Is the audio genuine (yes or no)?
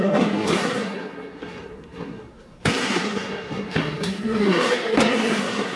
no